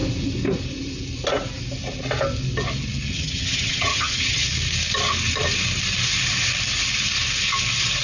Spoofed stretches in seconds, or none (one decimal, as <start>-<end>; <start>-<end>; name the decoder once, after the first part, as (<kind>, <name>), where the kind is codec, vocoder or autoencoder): 3.1-4.5 (vocoder, HiFi-GAN)